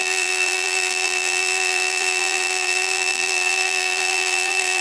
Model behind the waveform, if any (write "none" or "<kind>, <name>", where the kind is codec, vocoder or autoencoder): vocoder, BigVGAN v2